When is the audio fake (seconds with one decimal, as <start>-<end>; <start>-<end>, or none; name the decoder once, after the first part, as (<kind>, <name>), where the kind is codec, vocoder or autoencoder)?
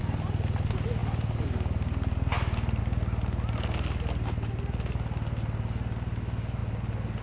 none